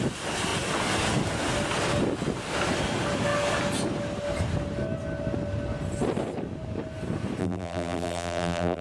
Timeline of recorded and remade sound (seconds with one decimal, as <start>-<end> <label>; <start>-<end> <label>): 0.0-7.4 recorded; 7.4-8.8 remade